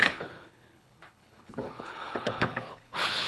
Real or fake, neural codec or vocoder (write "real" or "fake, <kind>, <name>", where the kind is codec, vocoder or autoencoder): fake, codec, HILCodec